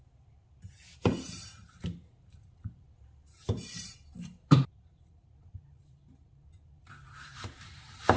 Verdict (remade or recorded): remade